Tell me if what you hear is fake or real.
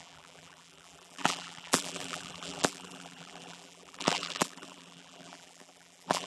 fake